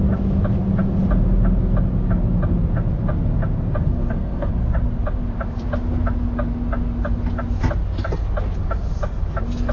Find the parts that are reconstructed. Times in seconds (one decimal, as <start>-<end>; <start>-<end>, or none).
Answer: 3.8-4.5